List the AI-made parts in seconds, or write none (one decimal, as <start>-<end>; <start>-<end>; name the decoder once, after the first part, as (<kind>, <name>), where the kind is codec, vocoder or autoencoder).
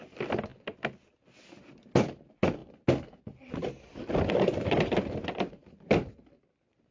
none